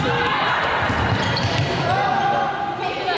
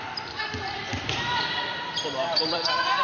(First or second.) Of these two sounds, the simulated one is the second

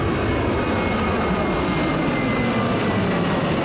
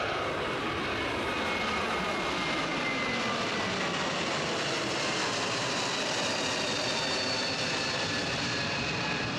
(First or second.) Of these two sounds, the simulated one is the second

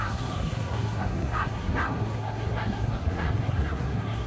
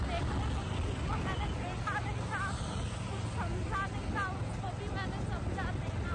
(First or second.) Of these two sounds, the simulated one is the first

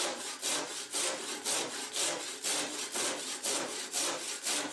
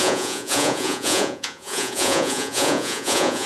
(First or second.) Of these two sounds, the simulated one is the second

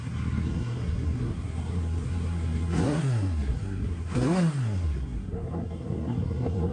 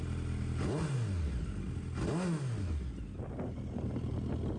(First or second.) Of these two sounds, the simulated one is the first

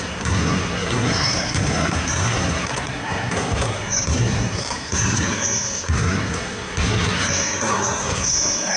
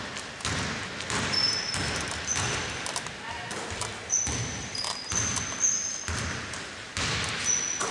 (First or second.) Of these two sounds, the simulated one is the first